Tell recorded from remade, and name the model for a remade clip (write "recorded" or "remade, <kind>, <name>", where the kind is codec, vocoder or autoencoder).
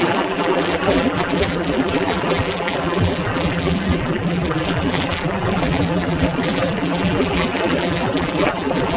remade, vocoder, BigVGAN v2